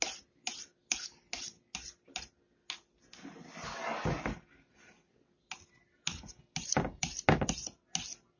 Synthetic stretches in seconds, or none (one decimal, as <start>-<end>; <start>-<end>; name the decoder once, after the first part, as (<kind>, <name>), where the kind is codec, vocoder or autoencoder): none